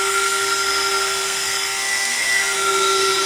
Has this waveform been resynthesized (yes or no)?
yes